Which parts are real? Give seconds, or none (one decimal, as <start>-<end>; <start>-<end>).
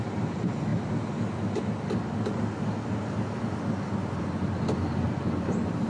0.0-5.9